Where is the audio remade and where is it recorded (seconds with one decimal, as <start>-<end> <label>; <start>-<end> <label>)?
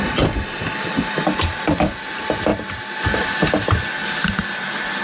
0.0-2.5 recorded; 2.5-3.0 remade; 3.0-5.0 recorded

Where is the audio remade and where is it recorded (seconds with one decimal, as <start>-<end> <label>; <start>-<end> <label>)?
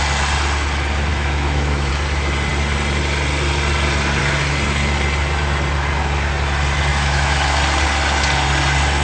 0.0-1.1 recorded; 1.1-1.9 remade; 1.9-6.9 recorded; 6.9-7.6 remade; 7.6-9.0 recorded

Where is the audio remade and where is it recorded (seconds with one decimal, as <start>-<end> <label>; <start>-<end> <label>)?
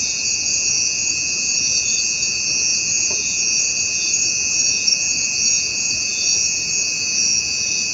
0.0-7.9 remade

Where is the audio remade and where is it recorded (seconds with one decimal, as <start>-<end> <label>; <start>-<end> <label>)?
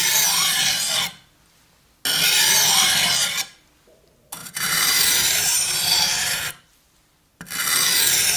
0.0-4.4 recorded; 4.4-6.5 remade; 6.5-8.4 recorded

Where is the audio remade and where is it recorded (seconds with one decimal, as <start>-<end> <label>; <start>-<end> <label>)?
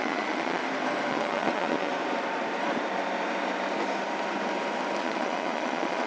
0.0-0.6 remade; 0.6-1.1 recorded; 1.1-1.9 remade; 1.9-5.0 recorded; 5.0-6.1 remade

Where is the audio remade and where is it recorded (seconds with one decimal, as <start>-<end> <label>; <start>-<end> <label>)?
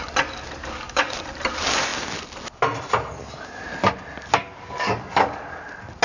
0.0-0.6 recorded; 0.6-1.2 remade; 1.2-4.4 recorded; 4.4-5.6 remade; 5.6-6.0 recorded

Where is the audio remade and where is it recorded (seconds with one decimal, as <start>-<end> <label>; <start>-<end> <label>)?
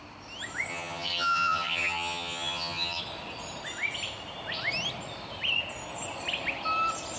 0.0-0.7 recorded; 0.7-3.0 remade; 3.0-7.2 recorded